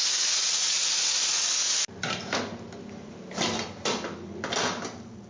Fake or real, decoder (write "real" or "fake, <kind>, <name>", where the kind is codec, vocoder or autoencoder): real